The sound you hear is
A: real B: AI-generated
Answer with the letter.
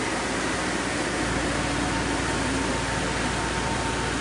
A